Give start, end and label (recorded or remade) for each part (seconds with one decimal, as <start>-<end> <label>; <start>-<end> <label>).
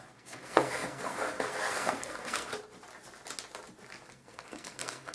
0.0-2.5 remade; 2.5-4.1 recorded; 4.1-5.1 remade